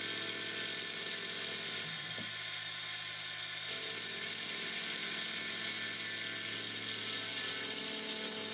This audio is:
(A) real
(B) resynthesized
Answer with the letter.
A